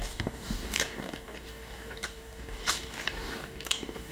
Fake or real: fake